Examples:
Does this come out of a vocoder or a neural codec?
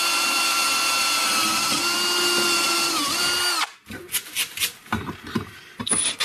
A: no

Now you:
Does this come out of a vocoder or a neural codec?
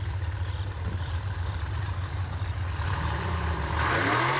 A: yes